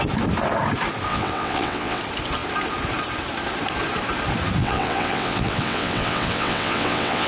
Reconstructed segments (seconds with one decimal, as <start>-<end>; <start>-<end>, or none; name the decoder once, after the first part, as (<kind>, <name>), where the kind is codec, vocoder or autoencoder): 1.1-2.0 (vocoder, WaveNeXt); 4.6-7.3

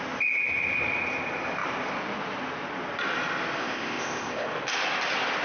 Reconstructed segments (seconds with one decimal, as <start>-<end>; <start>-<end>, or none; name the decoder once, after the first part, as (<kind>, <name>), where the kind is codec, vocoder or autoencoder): 3.6-4.5 (codec, ZipCodec)

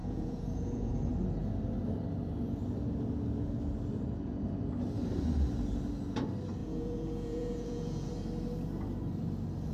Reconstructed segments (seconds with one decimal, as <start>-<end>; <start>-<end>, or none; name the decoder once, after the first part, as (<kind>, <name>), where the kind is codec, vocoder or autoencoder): 0.0-1.1 (vocoder, Vocos); 6.6-8.1

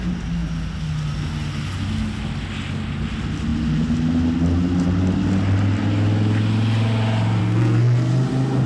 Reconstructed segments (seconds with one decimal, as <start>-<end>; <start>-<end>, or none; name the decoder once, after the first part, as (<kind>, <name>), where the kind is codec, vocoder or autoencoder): 7.4-8.1 (codec, SNAC)

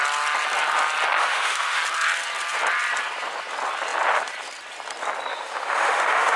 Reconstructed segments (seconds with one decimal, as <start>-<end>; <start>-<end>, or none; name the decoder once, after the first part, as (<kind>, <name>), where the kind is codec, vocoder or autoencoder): 1.2-1.8 (autoencoder, DAC-VAE); 5.3-6.4

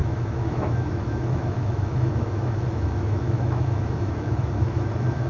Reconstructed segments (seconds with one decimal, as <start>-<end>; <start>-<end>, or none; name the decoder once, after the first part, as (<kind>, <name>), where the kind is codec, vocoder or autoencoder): 0.0-5.3 (autoencoder, DAC-VAE)